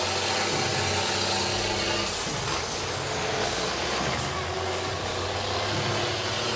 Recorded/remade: recorded